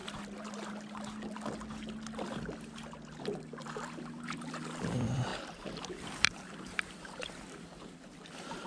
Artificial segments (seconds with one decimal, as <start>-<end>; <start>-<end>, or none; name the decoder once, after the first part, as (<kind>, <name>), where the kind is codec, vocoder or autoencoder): 3.2-7.7 (vocoder, BigVGAN v2)